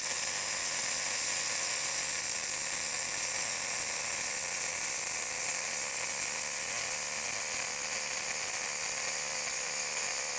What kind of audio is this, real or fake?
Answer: real